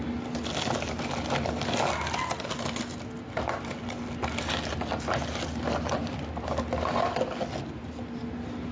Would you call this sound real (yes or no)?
yes